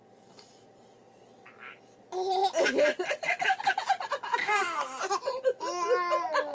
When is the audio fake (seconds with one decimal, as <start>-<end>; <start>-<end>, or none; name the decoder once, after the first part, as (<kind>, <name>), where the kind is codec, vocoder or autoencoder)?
4.4-5.0 (codec, SNAC)